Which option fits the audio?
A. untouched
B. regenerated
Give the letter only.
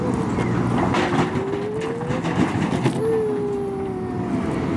A